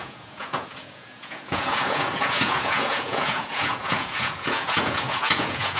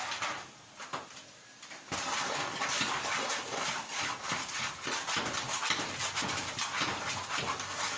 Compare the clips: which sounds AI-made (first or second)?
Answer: first